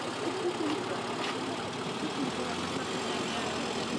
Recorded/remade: recorded